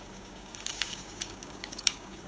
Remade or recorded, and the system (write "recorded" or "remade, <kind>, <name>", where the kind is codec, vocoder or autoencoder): remade, codec, DAC